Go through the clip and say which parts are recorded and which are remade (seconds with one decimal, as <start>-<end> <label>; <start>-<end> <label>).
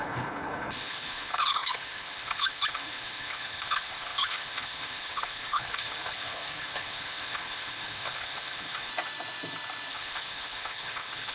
0.0-8.9 remade; 8.9-9.9 recorded; 9.9-11.3 remade